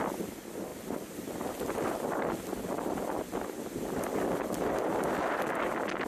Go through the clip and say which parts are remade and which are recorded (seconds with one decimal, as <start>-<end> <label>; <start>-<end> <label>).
0.0-6.1 recorded